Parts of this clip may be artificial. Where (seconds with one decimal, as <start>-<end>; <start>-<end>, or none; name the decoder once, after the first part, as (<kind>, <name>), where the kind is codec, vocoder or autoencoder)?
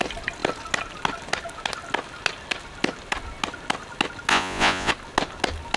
4.3-4.9 (vocoder, Vocos)